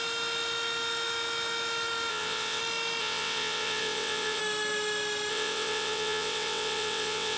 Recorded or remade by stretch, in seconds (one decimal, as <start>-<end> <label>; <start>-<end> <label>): 0.0-2.1 recorded; 2.1-2.6 remade; 2.6-3.0 recorded; 3.0-4.4 remade; 4.4-5.3 recorded; 5.3-7.4 remade